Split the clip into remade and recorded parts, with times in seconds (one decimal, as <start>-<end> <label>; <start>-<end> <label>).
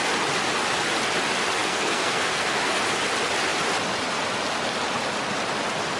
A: 0.0-1.6 recorded; 1.6-2.8 remade; 2.8-6.0 recorded